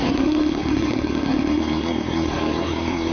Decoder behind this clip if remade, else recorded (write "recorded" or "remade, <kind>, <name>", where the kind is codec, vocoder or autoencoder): remade, codec, SNAC